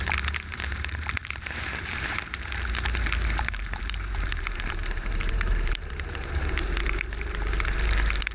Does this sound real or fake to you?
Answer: fake